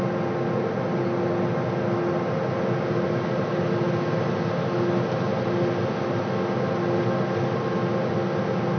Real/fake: real